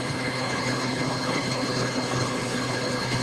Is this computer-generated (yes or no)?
yes